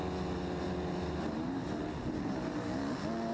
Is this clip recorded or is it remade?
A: recorded